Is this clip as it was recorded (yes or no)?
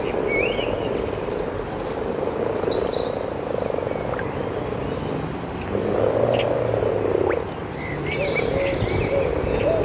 yes